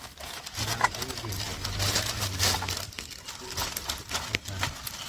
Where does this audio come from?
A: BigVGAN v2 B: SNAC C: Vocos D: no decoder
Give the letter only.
D